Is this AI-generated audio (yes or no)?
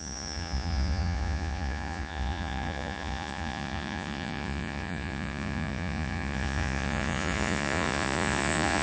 yes